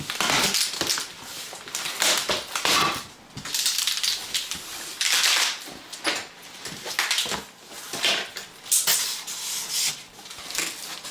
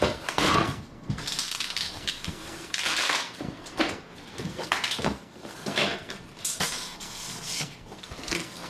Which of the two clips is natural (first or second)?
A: first